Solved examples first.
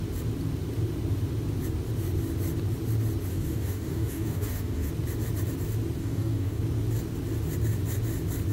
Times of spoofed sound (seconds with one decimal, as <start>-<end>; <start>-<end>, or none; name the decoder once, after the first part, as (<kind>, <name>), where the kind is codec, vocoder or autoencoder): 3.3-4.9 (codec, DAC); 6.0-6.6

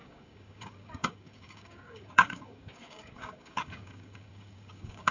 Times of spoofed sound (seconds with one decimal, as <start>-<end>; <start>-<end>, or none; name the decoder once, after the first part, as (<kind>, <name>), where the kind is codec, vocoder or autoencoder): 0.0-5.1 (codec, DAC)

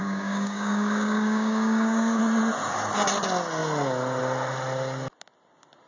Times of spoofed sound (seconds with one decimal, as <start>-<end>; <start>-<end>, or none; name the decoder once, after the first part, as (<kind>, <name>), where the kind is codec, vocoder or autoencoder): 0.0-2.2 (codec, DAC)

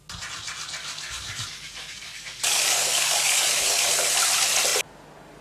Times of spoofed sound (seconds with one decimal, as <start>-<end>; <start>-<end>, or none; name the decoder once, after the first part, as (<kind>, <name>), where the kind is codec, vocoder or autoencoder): 0.8-3.9 (codec, DAC)

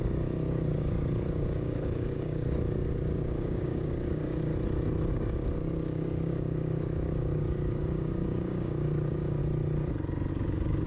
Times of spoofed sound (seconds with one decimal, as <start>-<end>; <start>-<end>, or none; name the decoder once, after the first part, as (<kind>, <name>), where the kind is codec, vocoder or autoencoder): 0.0-4.5 (codec, DAC); 5.1-9.4; 10.3-10.9

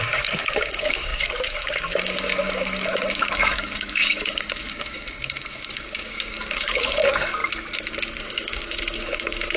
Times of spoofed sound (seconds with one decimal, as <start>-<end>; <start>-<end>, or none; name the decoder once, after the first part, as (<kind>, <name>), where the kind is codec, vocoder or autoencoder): 0.0-7.4 (codec, DAC); 8.2-9.6

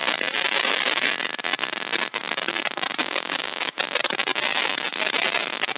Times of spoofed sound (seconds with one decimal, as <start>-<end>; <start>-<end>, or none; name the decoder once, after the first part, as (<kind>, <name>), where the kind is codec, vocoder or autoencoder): 3.0-3.8 (codec, DAC)

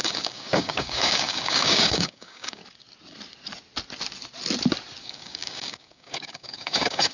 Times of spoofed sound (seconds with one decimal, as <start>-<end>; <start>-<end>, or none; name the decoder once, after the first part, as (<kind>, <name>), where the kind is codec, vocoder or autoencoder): 0.0-2.6 (codec, DAC); 5.0-7.1